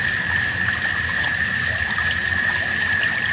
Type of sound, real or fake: real